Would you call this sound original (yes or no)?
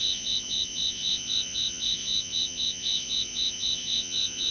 no